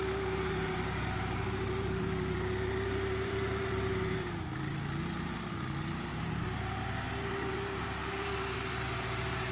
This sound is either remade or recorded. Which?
remade